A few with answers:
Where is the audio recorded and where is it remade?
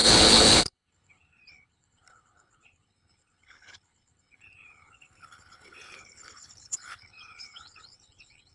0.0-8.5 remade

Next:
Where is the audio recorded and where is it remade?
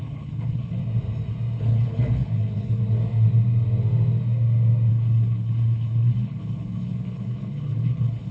0.0-0.8 remade; 0.8-1.6 recorded; 1.6-2.8 remade; 2.8-4.9 recorded; 4.9-8.3 remade